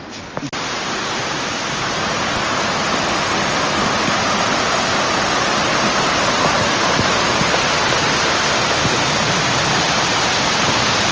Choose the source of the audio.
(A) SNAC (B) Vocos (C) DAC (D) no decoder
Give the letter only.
D